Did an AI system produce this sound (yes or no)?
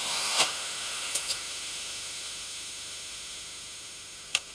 yes